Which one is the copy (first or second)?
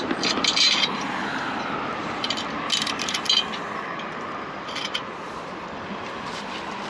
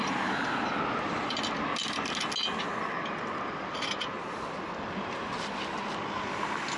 first